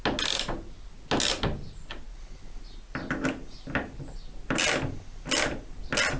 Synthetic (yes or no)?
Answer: no